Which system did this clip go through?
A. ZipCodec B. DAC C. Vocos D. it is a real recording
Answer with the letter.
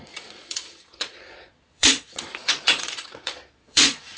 C